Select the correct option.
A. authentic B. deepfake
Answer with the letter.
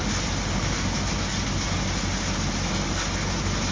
A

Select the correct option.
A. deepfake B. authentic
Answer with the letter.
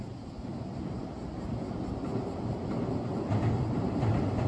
B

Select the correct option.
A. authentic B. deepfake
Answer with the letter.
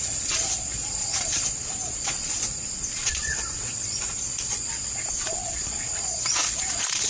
B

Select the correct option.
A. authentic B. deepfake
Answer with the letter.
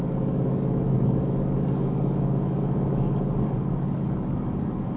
B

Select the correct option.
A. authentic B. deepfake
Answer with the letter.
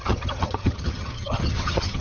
B